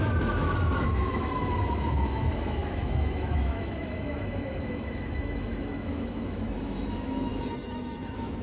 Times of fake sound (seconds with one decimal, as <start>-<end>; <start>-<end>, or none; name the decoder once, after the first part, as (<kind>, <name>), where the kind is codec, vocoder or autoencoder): 0.0-8.4 (autoencoder, DAC-VAE)